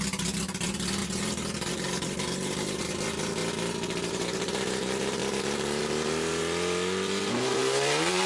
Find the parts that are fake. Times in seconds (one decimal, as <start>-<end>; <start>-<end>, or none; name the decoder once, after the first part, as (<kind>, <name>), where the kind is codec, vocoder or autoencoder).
0.0-3.4 (vocoder, BigVGAN v2); 4.1-6.4; 7.5-8.3